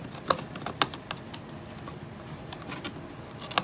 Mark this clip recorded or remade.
recorded